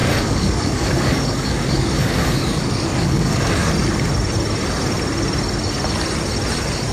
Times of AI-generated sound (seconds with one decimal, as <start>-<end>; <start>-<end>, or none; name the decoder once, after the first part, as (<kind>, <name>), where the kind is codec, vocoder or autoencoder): 0.0-3.6 (codec, DAC)